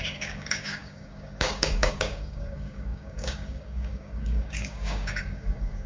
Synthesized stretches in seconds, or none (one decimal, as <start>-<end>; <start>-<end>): 0.0-5.9